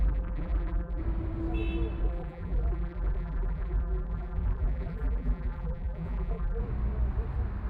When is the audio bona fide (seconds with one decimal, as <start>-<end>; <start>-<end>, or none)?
1.0-2.0; 6.6-7.7